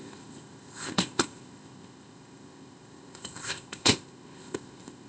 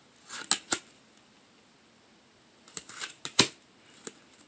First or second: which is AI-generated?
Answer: first